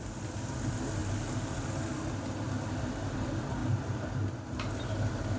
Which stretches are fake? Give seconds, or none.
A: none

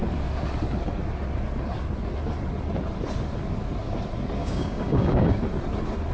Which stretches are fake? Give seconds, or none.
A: 4.4-5.4 (codec, DAC)

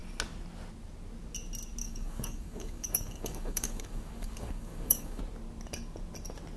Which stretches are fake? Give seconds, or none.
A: 1.8-5.2 (codec, DAC)

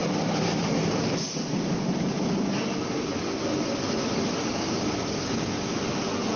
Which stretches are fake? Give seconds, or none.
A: 4.5-5.8 (codec, DAC)

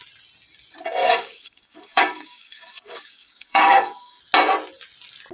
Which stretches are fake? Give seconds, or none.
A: 1.0-4.2 (codec, DAC)